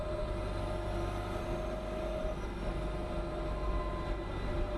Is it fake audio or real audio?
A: real